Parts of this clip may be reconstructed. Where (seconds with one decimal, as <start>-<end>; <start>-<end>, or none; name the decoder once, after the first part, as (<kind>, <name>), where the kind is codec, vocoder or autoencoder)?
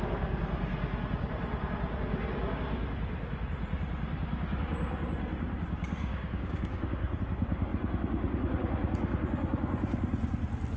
6.0-7.2 (codec, DAC)